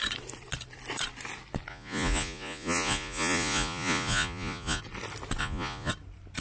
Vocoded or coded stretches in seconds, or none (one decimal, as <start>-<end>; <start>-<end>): 1.7-4.8; 5.4-5.9